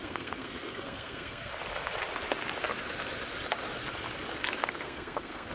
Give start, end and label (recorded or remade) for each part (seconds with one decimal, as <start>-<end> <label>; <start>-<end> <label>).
0.0-1.5 remade; 1.5-4.6 recorded; 4.6-5.5 remade